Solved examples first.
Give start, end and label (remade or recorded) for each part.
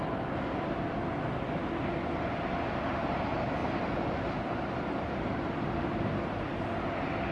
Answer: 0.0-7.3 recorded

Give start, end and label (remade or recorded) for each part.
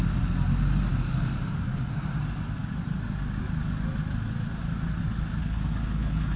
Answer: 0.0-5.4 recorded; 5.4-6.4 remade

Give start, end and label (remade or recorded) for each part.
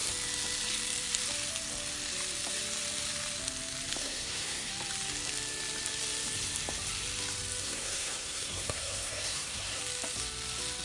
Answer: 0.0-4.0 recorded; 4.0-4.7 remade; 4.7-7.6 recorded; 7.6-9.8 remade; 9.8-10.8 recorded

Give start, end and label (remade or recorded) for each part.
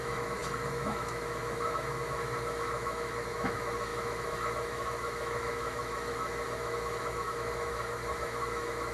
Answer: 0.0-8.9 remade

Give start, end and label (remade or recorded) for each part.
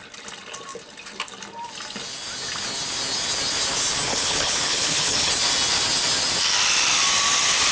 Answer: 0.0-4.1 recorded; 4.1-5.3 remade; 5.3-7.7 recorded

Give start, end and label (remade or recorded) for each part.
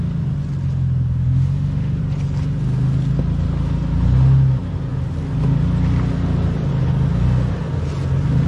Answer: 0.0-1.2 recorded; 1.2-2.0 remade; 2.0-8.5 recorded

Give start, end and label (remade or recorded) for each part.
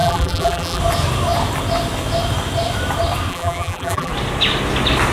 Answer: 0.0-0.8 remade; 0.8-3.3 recorded; 3.3-4.1 remade; 4.1-5.1 recorded